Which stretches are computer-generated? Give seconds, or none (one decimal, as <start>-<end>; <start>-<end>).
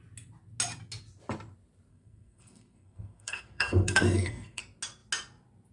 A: 1.9-4.6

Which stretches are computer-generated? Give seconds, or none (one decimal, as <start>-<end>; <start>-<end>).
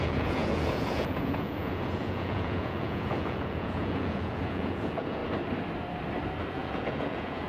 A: 0.0-5.2; 6.5-7.5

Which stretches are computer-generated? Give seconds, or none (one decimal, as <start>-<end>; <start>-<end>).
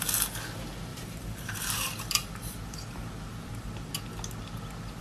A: 0.9-3.9